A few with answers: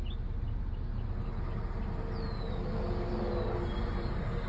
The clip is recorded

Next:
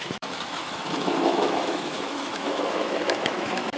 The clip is remade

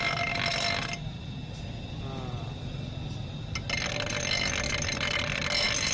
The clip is recorded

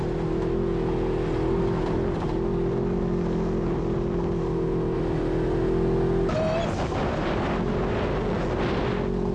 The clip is recorded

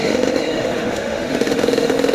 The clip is remade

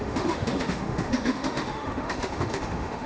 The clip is remade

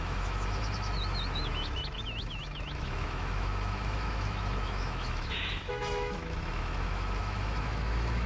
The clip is remade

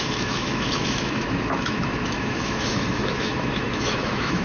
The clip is remade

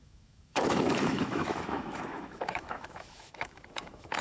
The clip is remade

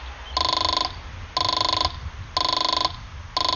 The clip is recorded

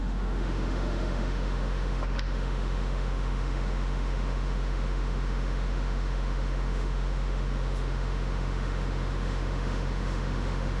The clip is remade